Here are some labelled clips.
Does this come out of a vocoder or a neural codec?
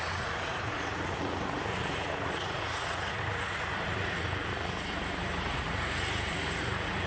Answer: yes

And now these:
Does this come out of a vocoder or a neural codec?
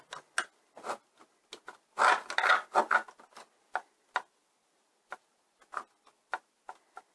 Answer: no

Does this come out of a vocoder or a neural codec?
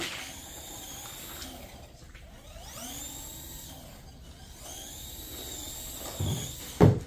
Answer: no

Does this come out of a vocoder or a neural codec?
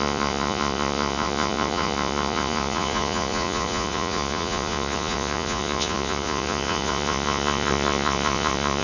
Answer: yes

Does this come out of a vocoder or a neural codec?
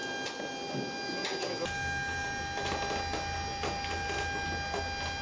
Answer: no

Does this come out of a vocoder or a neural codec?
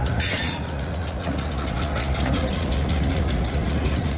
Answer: yes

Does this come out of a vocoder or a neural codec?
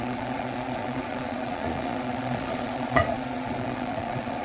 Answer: yes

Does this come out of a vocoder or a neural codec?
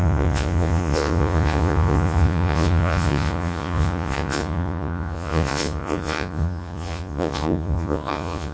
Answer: yes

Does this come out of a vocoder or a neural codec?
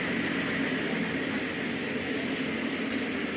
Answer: no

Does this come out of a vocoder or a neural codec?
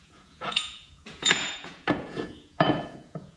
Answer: yes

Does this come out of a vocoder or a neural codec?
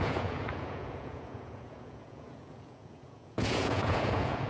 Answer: yes